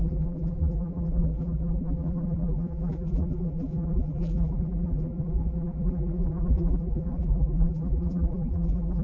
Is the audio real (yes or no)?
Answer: no